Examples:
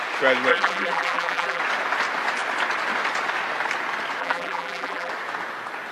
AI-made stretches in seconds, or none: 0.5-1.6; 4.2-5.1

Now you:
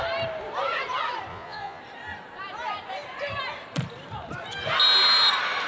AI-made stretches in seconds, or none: 1.3-1.8

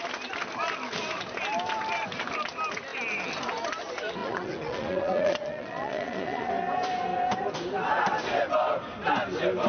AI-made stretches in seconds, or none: 4.2-6.5

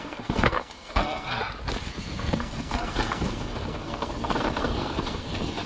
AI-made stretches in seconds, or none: 0.0-1.4; 2.0-5.7